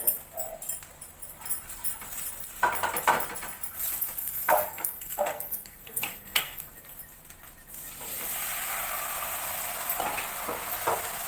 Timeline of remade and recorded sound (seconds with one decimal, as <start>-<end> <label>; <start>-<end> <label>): 0.0-4.2 recorded; 4.2-6.7 remade; 6.7-11.3 recorded